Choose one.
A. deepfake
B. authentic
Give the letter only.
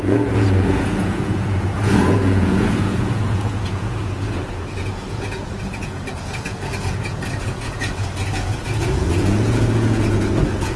A